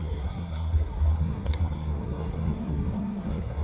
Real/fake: fake